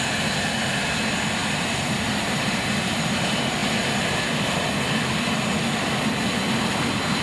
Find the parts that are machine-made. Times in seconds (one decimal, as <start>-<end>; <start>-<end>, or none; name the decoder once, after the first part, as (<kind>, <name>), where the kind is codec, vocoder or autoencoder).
1.4-2.6 (vocoder, BigVGAN v2)